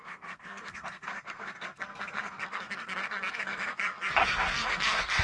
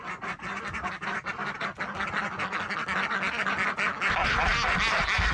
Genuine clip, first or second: second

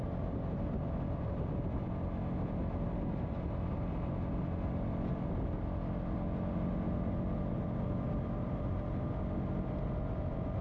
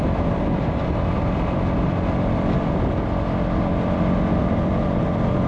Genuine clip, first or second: first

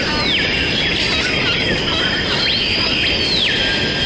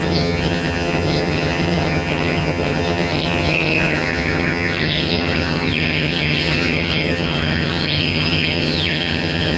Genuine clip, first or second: first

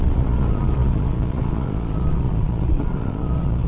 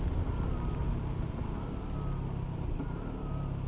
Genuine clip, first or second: second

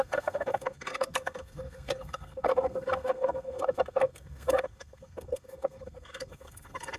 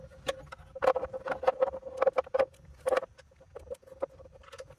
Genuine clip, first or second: second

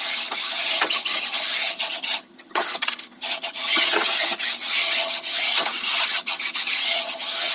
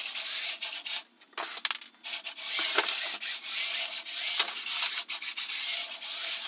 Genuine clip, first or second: second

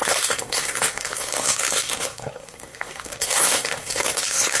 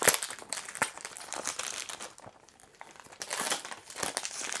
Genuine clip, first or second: second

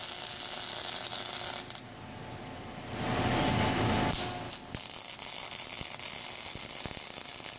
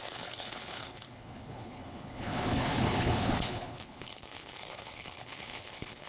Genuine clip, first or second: first